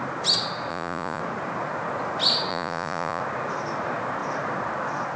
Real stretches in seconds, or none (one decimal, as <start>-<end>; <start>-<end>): 0.0-0.7; 1.2-2.5; 3.2-5.2